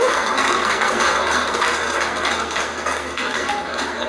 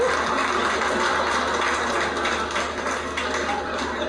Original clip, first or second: second